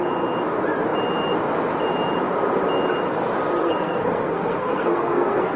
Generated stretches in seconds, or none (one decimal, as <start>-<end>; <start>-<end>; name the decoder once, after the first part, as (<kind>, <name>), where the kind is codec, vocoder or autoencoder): 3.6-5.6 (codec, SNAC)